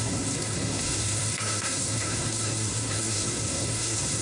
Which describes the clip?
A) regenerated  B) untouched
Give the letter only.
A